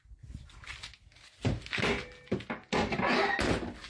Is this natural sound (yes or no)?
yes